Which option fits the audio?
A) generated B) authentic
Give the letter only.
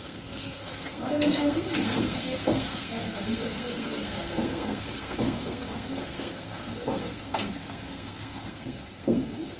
A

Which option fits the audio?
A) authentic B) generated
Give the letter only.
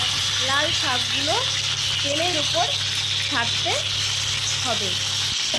A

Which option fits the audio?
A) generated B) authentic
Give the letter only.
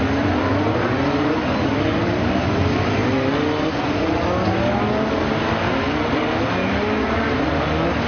B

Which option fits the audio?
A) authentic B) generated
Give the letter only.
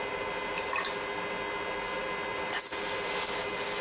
A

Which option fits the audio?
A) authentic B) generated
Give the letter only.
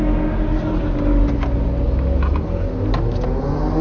A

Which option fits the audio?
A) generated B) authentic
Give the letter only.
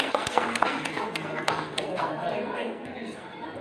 A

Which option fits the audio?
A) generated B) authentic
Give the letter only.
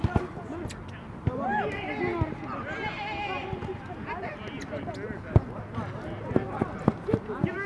B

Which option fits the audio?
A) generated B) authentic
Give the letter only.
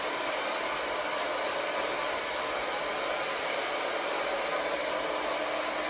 B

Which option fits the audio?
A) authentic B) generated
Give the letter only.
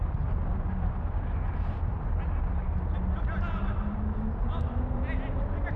A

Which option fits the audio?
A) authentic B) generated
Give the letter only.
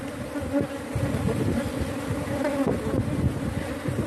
A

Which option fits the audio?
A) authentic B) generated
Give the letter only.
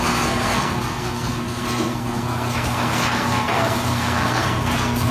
B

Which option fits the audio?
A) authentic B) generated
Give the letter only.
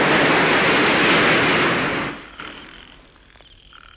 A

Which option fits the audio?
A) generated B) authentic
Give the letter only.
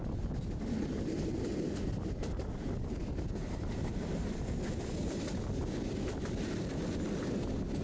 B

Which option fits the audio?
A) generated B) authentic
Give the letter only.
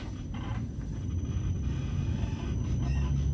B